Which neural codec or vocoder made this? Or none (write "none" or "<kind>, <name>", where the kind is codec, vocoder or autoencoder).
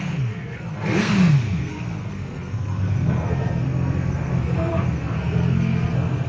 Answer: codec, SNAC